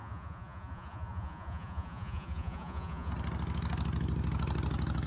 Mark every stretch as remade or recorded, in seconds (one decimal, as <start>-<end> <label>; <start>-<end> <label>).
0.0-3.1 remade; 3.1-5.1 recorded